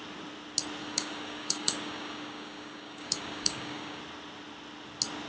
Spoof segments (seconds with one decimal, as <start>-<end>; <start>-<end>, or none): 0.8-4.0